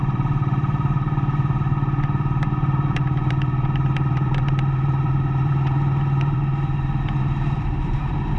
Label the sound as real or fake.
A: fake